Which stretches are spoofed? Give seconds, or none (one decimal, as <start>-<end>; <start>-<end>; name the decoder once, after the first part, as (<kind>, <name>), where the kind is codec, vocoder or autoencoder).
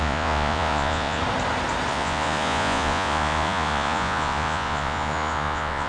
0.0-1.2 (vocoder, Vocos); 1.9-5.9